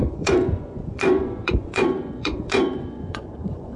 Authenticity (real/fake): fake